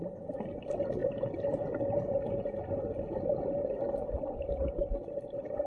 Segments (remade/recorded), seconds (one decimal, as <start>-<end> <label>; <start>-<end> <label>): 0.0-5.7 recorded